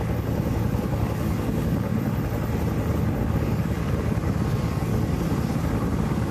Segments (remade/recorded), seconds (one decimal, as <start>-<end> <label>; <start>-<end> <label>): 0.0-1.9 remade; 1.9-3.2 recorded; 3.2-4.9 remade; 4.9-5.6 recorded; 5.6-6.3 remade